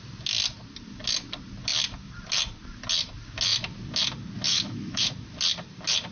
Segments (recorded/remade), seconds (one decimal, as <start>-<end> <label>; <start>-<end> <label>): 0.0-4.5 recorded; 4.5-5.1 remade; 5.1-6.1 recorded